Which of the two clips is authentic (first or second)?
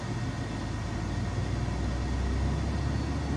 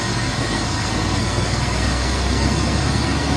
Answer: first